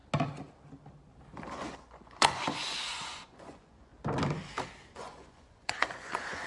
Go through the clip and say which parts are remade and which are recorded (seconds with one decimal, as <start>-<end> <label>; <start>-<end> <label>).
0.0-1.5 recorded; 1.5-3.9 remade; 3.9-4.9 recorded; 4.9-6.5 remade